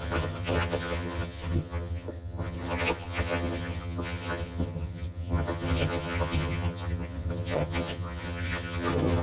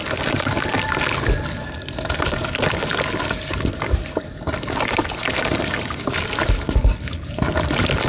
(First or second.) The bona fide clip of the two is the second